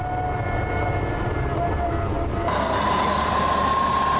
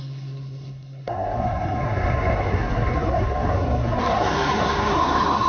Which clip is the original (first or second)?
first